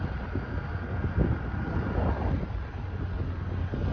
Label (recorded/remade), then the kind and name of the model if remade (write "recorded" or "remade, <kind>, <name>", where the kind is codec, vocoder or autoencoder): recorded